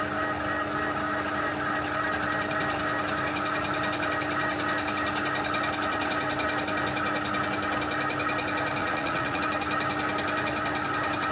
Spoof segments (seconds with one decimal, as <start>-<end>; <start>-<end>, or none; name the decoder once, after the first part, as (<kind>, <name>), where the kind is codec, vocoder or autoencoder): 8.8-9.4 (vocoder, Vocos)